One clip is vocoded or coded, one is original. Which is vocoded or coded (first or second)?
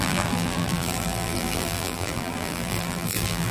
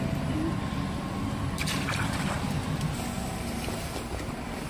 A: first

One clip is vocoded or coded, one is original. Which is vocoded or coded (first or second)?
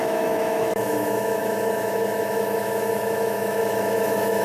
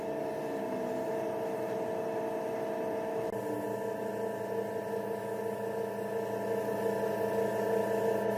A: first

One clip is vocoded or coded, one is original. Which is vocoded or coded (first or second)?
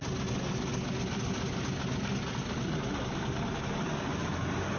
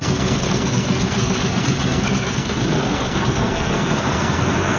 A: second